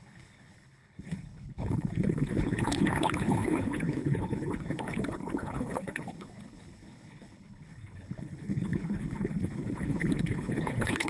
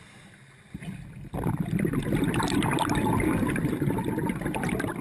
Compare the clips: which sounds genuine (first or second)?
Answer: second